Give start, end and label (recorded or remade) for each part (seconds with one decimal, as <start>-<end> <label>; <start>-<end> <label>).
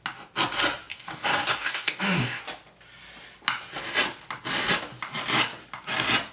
0.0-0.9 recorded; 0.9-2.4 remade; 2.4-6.3 recorded